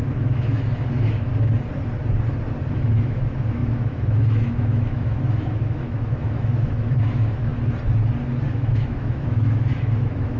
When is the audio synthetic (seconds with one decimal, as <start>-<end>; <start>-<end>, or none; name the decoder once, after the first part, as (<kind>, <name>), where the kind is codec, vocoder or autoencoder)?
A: 0.0-1.3 (autoencoder, DAC-VAE); 2.7-7.5; 8.5-10.4